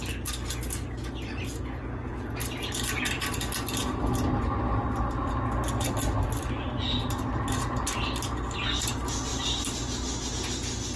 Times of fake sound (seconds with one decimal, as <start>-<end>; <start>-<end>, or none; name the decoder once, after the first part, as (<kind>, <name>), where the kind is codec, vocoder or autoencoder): none